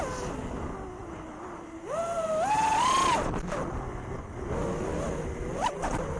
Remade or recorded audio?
recorded